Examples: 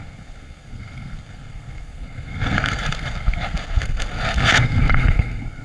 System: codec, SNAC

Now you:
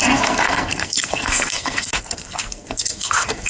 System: codec, SNAC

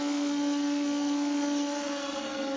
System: codec, SNAC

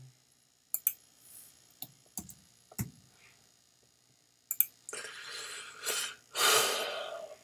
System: none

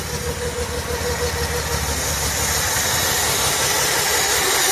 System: none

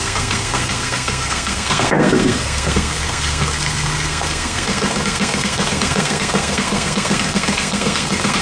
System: codec, SNAC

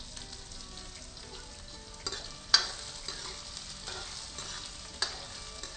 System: none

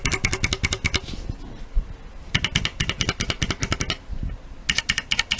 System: none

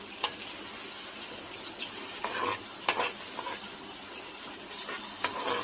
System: none